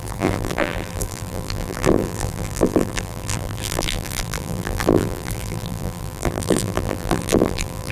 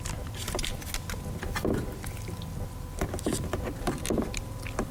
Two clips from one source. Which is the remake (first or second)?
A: first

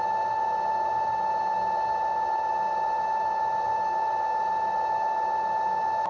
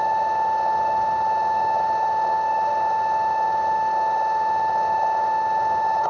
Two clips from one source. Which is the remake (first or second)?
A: second